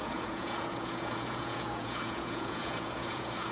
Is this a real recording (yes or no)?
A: no